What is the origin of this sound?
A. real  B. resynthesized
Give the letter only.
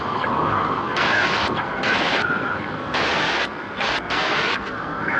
B